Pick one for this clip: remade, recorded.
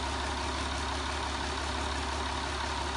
recorded